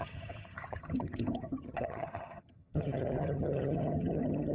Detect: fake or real fake